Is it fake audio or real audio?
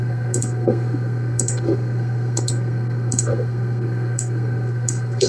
fake